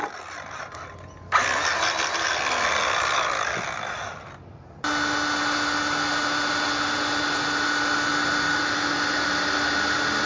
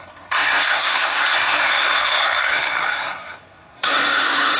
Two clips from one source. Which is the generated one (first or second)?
second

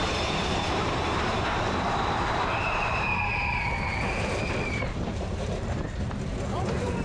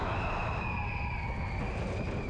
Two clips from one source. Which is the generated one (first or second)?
first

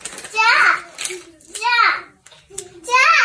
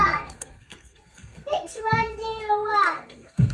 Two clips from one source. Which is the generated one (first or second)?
second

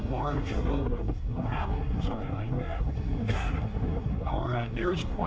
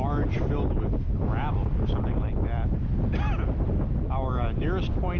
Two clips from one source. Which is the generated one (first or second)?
first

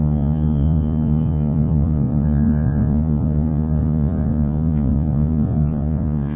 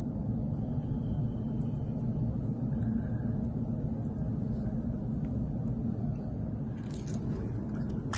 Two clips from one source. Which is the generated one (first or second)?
first